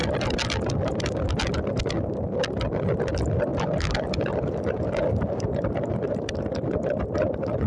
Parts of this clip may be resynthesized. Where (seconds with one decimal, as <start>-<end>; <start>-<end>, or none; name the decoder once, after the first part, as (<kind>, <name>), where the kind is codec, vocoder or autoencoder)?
3.5-4.9 (vocoder, BigVGAN v2)